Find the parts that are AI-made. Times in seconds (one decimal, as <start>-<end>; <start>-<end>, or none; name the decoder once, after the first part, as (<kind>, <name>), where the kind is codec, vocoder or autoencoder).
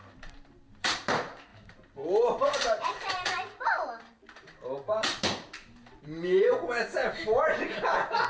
0.0-8.3 (vocoder, BigVGAN v2)